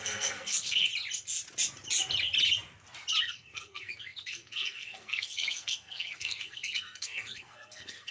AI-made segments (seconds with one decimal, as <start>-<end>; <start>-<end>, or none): 0.0-0.9; 3.2-8.1